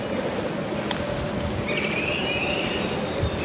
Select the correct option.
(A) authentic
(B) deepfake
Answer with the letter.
A